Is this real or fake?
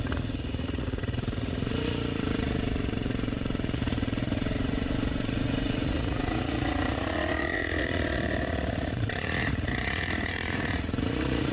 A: fake